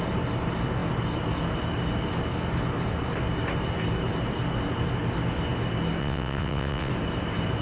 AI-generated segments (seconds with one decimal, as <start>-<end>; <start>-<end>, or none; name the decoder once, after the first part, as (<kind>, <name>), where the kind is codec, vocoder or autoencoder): 6.0-6.9 (vocoder, WaveNeXt)